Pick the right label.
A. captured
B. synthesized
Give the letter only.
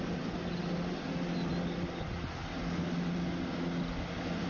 A